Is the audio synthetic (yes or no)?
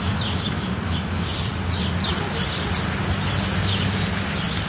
no